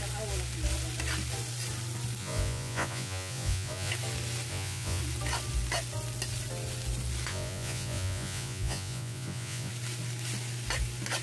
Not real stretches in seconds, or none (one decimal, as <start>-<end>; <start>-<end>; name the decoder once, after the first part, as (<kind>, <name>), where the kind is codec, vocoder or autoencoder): 2.2-3.9 (vocoder, Vocos); 4.5-5.0; 7.3-9.7